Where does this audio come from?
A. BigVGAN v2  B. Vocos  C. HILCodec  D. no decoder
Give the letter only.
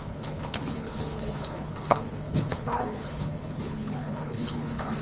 C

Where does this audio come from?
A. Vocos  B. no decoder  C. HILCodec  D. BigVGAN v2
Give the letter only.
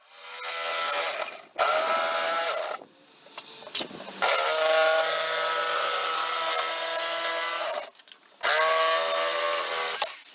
B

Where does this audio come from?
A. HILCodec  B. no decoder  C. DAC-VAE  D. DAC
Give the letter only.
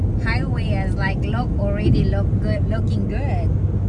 B